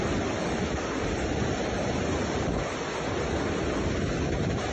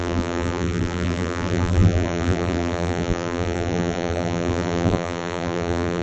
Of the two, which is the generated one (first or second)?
second